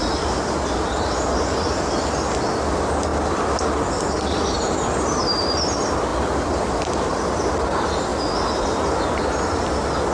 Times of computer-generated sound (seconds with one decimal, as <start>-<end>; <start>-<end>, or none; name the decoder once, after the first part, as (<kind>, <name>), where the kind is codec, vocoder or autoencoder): none